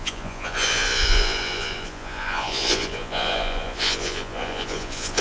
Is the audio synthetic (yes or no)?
yes